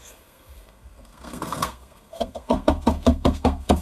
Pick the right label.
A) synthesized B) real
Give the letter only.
A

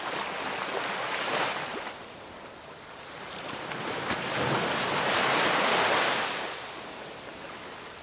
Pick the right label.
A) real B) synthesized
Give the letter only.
A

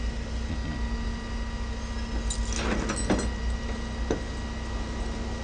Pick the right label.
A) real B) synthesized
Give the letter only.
A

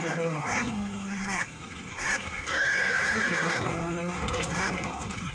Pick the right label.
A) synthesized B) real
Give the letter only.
A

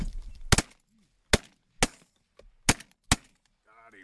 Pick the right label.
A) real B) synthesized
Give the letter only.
A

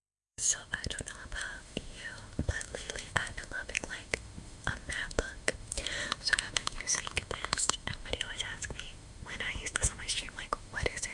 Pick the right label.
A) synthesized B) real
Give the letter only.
A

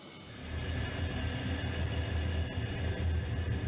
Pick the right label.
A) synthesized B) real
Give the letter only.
B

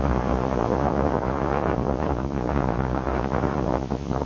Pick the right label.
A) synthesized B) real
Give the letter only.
A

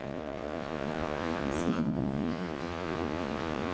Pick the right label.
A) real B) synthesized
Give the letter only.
B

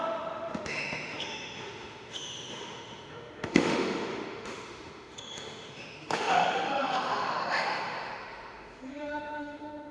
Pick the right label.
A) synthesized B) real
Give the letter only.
A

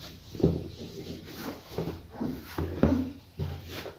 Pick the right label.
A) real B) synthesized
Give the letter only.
B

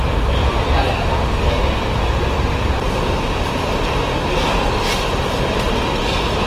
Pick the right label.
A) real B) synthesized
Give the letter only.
A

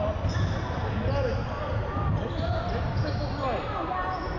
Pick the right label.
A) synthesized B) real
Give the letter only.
B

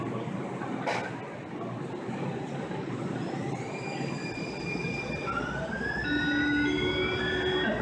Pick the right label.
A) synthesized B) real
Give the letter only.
B